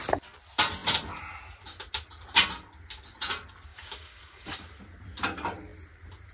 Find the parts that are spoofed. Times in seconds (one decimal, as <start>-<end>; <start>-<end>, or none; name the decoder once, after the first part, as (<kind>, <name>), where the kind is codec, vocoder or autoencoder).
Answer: 3.7-4.7 (codec, DAC)